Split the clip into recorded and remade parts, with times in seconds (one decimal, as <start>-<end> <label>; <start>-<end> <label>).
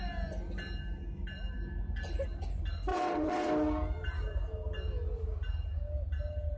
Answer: 0.0-2.9 recorded; 2.9-3.5 remade; 3.5-6.6 recorded